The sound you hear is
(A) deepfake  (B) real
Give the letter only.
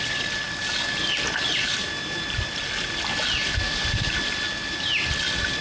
B